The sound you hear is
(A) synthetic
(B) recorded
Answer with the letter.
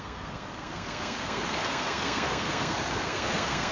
A